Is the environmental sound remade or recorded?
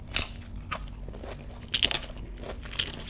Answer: recorded